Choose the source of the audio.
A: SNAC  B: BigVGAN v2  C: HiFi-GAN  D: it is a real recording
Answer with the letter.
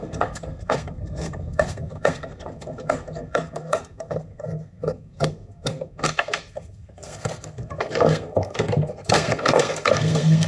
A